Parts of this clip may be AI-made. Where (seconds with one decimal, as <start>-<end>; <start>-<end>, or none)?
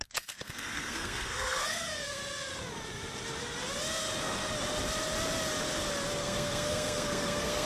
0.0-2.2; 6.2-7.7